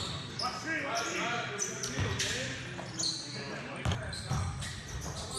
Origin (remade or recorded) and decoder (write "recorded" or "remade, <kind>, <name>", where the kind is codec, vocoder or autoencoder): recorded